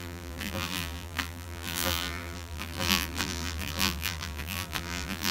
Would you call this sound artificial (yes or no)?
yes